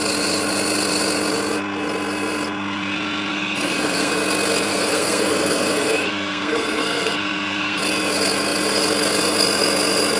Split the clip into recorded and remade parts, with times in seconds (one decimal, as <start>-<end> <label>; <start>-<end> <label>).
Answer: 0.0-3.3 recorded; 3.3-4.1 remade; 4.1-4.7 recorded; 4.7-7.8 remade; 7.8-10.2 recorded

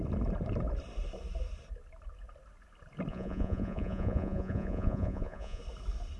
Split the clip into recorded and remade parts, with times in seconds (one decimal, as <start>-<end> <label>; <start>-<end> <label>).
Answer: 0.0-3.1 recorded; 3.1-5.6 remade; 5.6-6.2 recorded

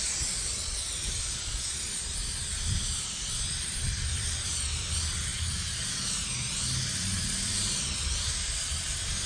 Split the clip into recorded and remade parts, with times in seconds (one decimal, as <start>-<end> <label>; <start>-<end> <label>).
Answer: 0.0-9.3 remade